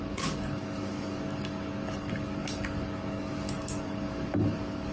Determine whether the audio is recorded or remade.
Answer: remade